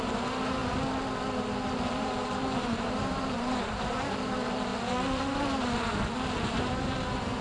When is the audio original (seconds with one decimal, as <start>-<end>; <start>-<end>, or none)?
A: 0.6-1.9; 4.7-6.5